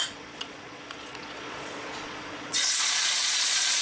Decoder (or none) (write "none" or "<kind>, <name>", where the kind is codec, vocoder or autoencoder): vocoder, Vocos